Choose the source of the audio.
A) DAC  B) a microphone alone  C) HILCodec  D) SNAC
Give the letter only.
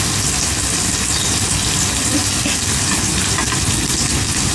B